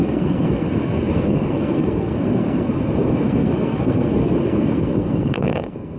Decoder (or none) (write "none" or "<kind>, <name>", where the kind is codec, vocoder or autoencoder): codec, SNAC